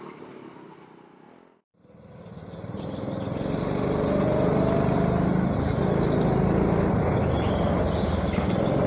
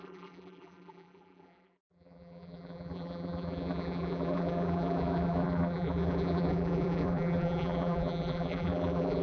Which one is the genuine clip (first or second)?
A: first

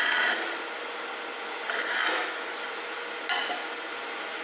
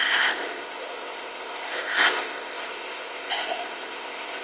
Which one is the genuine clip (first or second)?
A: first